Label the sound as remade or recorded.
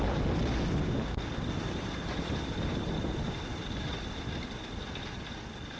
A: recorded